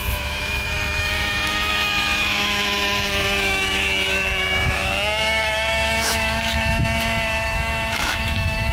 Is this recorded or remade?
remade